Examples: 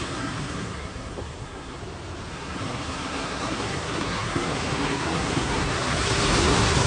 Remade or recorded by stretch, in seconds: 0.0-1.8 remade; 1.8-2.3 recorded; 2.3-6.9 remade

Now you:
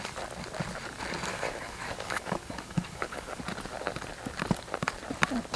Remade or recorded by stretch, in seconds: 0.0-1.3 recorded; 1.3-3.4 remade; 3.4-5.6 recorded

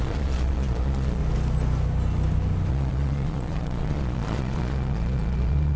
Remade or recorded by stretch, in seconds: 0.0-1.2 remade; 1.2-2.7 recorded; 2.7-5.8 remade

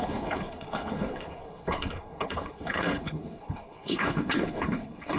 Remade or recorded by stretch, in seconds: 0.0-5.2 remade

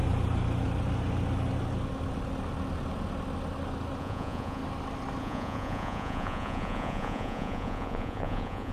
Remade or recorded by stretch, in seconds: 0.0-4.0 recorded; 4.0-4.6 remade; 4.6-5.2 recorded; 5.2-8.7 remade

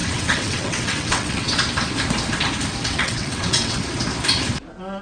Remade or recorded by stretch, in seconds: 0.0-1.6 remade; 1.6-2.9 recorded; 2.9-3.8 remade; 3.8-5.0 recorded